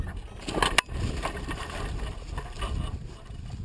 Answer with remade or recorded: recorded